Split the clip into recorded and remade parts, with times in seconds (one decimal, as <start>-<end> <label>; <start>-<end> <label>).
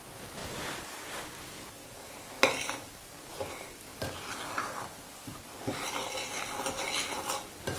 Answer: 0.0-7.8 recorded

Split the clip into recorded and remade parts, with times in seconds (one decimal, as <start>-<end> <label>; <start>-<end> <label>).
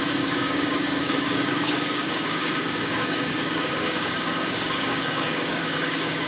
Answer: 0.0-6.3 remade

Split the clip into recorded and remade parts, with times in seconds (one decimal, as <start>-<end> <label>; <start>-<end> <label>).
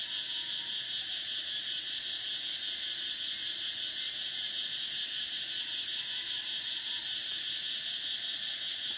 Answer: 0.0-9.0 recorded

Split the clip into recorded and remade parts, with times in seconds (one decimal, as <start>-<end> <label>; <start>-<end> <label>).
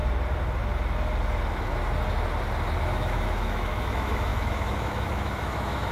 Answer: 0.0-2.8 recorded; 2.8-5.9 remade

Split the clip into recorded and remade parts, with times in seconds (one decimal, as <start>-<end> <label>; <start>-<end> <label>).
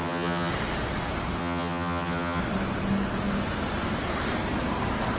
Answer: 0.0-0.5 remade; 0.5-1.4 recorded; 1.4-2.4 remade; 2.4-5.2 recorded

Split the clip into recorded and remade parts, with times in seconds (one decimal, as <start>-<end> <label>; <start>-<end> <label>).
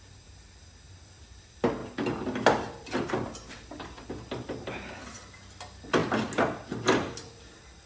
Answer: 0.0-7.9 recorded